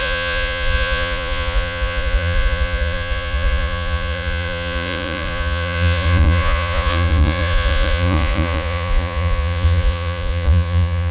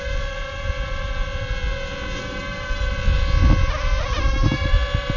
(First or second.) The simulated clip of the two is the first